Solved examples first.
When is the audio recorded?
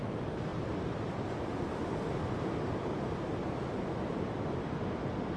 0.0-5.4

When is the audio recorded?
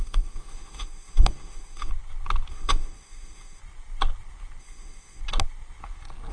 1.9-2.5; 3.6-4.6; 5.2-6.3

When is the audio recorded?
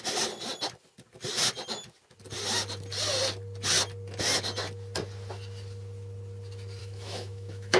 0.0-6.8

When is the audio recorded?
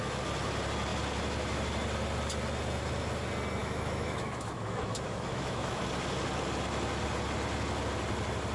0.0-3.6; 5.8-8.5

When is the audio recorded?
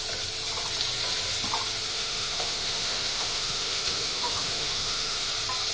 0.0-1.9; 5.3-5.7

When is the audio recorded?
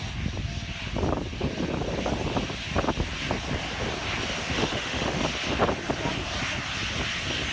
0.0-4.4; 5.2-7.5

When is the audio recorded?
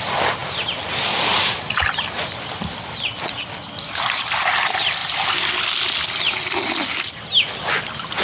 0.0-8.2